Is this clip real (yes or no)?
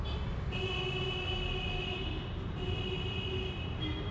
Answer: yes